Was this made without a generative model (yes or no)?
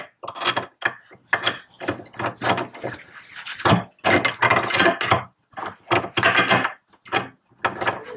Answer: yes